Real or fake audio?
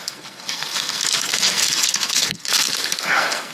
fake